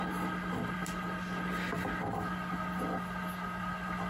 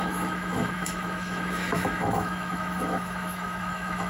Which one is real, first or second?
first